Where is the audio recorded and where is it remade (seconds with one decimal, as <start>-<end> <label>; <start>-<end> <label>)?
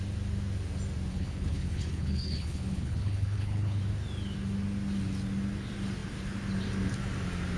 0.0-1.1 recorded; 1.1-3.8 remade; 3.8-7.6 recorded